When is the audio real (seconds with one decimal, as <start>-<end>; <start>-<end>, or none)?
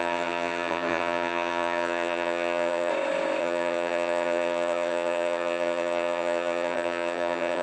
2.9-3.4